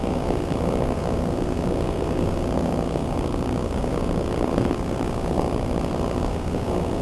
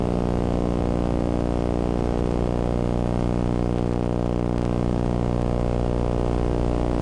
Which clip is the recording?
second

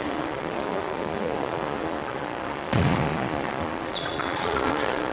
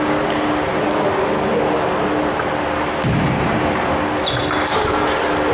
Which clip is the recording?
second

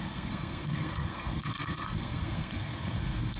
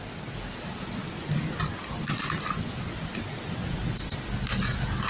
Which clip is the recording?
second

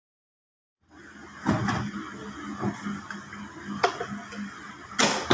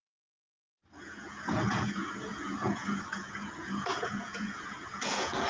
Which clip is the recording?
first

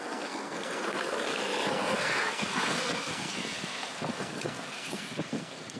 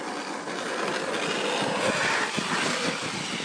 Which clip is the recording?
second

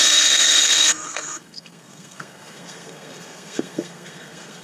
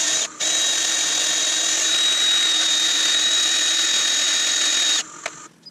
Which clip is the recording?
second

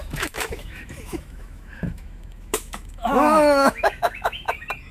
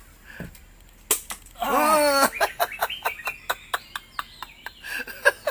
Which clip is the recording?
second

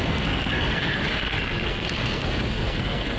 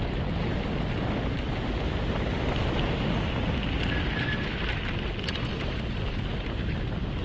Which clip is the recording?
second